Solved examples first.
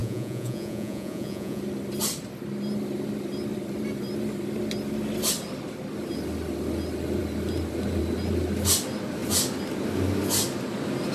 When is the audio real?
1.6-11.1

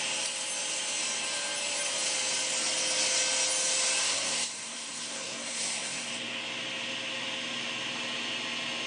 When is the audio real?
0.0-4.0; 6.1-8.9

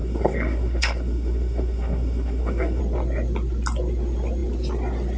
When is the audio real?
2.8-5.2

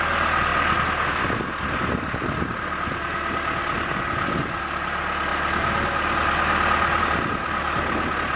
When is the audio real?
0.0-8.4

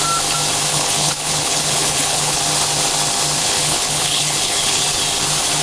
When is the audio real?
0.0-0.7; 2.4-3.4; 5.0-5.6

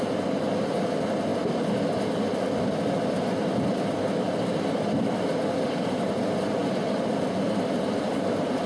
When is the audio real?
0.0-8.7

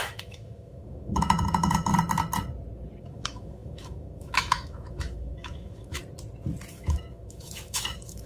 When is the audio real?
1.9-3.0; 6.0-6.7